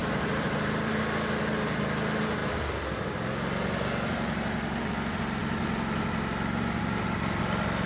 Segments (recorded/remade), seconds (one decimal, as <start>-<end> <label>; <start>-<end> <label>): 0.0-1.0 remade; 1.0-7.9 recorded